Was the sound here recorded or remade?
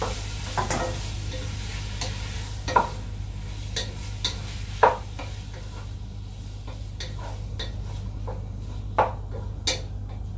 recorded